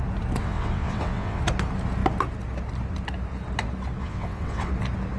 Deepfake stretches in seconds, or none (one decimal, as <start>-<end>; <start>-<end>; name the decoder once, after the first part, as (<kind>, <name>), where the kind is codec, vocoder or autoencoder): 0.4-1.4 (vocoder, WaveNeXt); 4.0-4.7